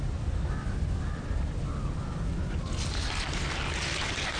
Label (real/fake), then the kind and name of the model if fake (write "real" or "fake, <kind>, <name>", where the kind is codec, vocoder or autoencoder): real